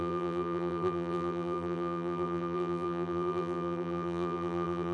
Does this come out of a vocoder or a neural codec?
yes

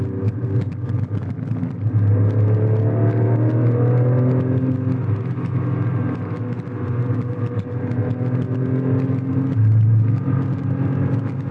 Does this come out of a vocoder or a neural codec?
no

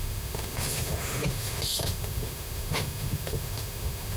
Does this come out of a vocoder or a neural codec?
yes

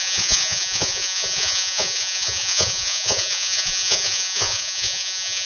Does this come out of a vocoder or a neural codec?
yes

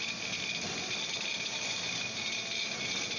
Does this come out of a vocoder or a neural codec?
no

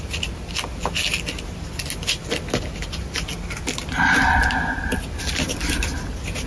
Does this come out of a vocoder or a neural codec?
no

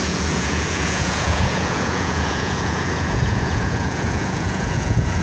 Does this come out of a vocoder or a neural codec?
yes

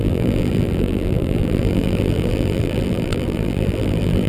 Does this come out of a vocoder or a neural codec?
yes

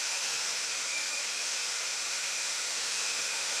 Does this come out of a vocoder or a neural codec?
yes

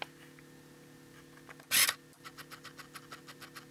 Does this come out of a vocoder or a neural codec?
no